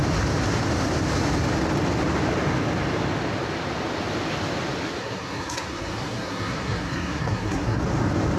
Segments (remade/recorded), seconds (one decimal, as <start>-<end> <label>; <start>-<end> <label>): 0.0-5.0 recorded; 5.0-7.8 remade; 7.8-8.4 recorded